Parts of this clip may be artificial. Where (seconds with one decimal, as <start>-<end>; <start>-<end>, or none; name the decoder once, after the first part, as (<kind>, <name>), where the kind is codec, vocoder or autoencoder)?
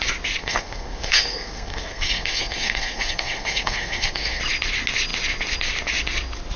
0.4-4.4 (codec, SNAC)